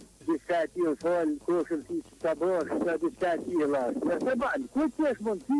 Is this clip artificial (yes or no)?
no